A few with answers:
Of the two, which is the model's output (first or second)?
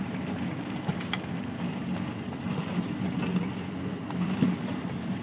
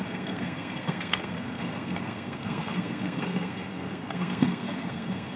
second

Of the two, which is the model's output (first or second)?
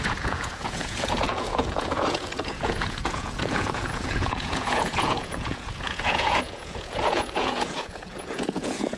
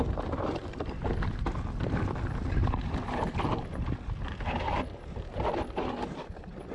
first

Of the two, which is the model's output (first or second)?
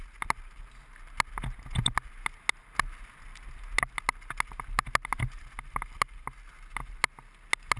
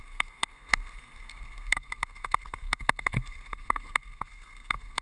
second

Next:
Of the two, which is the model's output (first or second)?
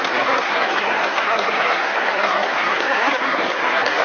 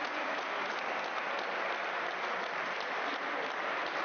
first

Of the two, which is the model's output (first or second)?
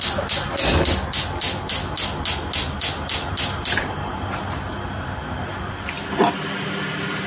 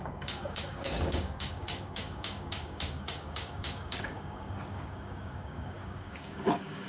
second